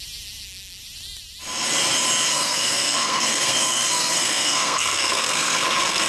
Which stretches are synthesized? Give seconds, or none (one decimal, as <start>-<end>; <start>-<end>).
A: 2.3-6.1